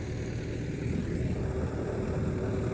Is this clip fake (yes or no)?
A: no